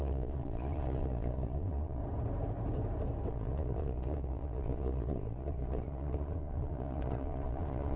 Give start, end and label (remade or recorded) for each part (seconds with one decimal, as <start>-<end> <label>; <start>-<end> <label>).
0.0-2.0 remade; 2.0-3.3 recorded; 3.3-8.0 remade

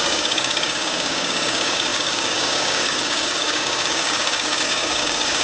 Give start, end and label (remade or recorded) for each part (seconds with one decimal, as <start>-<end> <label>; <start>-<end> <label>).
0.0-5.4 remade

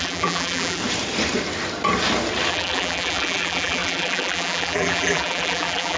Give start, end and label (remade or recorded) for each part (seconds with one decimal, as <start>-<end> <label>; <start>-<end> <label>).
0.0-0.8 remade; 0.8-2.5 recorded; 2.5-6.0 remade